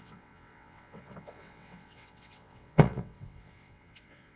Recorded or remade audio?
remade